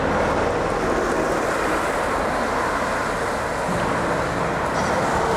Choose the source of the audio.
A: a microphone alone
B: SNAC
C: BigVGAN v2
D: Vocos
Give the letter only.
A